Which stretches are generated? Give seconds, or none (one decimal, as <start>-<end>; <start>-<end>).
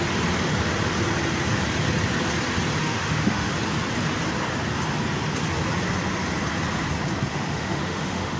2.8-3.5; 7.3-8.4